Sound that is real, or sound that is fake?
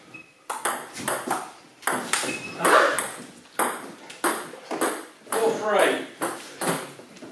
real